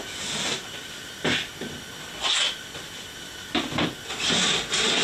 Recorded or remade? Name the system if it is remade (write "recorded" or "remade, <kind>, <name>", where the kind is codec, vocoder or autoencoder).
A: recorded